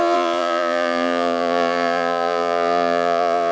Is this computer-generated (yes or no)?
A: yes